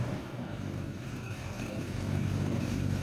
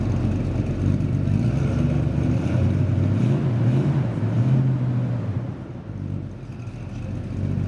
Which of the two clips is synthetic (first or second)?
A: first